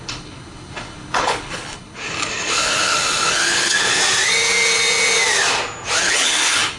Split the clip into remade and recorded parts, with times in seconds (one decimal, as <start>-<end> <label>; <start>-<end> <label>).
0.0-4.0 remade; 4.0-6.0 recorded; 6.0-6.8 remade